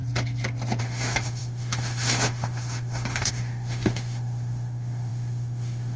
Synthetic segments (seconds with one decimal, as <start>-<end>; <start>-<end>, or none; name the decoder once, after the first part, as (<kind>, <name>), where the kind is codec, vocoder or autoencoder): 0.8-6.0 (autoencoder, DAC-VAE)